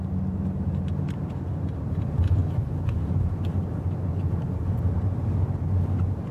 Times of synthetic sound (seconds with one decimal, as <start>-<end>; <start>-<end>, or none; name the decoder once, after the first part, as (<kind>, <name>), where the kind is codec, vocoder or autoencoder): none